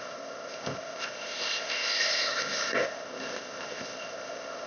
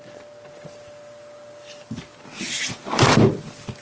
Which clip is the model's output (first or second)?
first